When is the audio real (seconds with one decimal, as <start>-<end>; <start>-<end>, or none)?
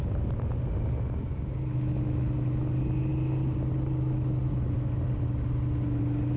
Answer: 0.0-6.4